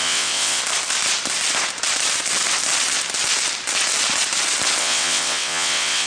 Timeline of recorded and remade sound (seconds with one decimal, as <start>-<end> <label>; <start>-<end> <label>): 0.0-0.6 remade; 0.6-4.8 recorded; 4.8-6.1 remade